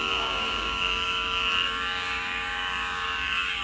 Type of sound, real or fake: fake